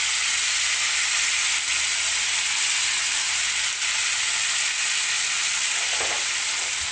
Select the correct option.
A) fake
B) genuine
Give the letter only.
B